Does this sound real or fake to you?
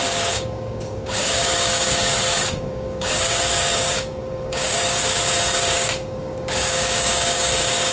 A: fake